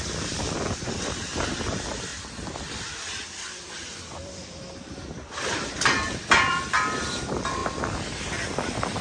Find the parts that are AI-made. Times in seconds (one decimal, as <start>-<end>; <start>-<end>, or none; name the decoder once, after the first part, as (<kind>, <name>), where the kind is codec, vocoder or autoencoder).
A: 0.0-2.1 (vocoder, BigVGAN v2); 3.7-9.0